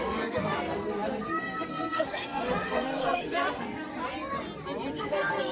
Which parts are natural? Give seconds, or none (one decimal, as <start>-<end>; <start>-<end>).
3.9-5.0